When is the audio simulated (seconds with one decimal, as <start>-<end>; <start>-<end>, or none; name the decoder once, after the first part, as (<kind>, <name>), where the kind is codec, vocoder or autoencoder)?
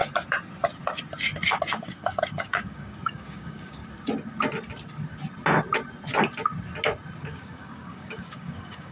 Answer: 1.8-3.8 (codec, DAC); 7.2-8.9